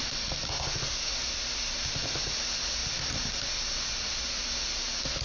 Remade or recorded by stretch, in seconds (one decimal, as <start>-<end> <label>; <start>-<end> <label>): 0.0-5.2 recorded